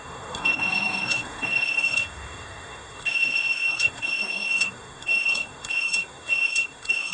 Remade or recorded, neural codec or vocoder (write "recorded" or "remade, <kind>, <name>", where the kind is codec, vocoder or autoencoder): remade, codec, SNAC